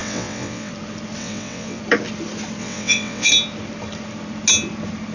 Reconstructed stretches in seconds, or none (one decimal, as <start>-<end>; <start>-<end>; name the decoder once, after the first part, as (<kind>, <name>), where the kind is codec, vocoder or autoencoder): 0.0-0.7 (vocoder, WaveNeXt); 1.2-1.8; 2.6-3.3